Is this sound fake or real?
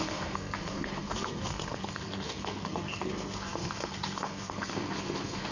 fake